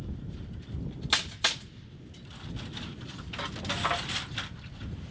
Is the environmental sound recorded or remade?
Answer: recorded